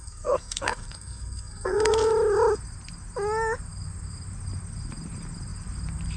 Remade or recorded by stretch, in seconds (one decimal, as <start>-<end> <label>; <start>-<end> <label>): 0.0-2.1 remade; 2.1-6.2 recorded